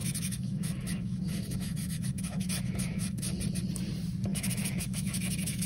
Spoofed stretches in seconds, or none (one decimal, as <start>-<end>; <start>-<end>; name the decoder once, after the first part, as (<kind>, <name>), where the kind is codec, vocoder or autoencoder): 0.0-3.4 (autoencoder, DAC-VAE); 4.3-5.7